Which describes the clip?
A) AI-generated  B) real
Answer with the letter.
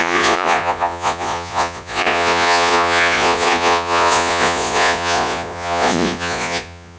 A